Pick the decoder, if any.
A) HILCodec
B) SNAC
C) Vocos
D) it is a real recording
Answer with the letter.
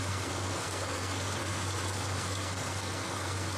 B